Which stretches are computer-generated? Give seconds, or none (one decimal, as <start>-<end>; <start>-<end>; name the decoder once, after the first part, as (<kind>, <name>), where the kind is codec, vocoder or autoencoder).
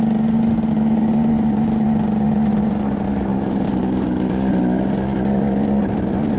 3.3-4.5 (vocoder, BigVGAN v2)